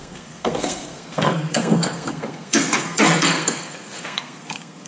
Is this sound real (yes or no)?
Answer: no